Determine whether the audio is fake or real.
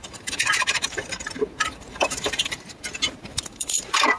fake